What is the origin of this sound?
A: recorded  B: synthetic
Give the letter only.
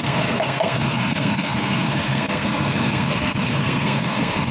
B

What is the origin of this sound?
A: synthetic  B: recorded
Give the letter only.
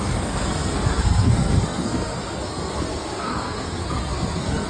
A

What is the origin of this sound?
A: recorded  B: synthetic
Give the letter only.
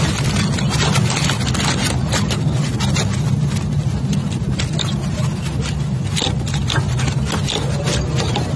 A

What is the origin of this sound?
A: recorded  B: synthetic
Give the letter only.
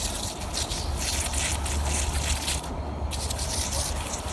A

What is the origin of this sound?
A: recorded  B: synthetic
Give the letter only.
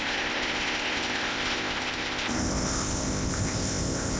B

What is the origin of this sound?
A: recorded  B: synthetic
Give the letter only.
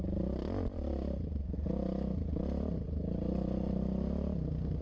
A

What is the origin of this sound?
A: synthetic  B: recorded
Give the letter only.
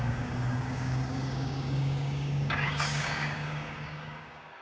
A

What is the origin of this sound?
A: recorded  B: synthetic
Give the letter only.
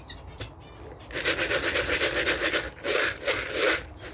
A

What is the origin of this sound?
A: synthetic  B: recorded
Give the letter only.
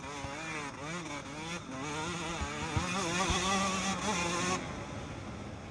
B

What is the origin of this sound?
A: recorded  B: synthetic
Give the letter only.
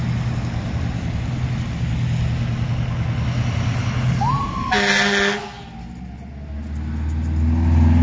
A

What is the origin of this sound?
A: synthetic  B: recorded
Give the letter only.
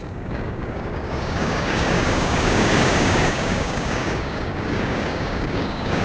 A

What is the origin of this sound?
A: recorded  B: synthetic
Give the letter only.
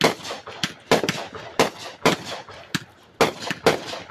A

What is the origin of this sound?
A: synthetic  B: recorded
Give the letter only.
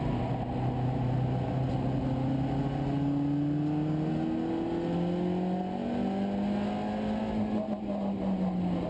B